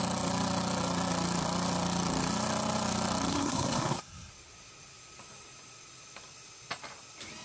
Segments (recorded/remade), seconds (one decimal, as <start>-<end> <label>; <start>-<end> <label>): 0.0-3.3 recorded; 3.3-4.3 remade; 4.3-7.4 recorded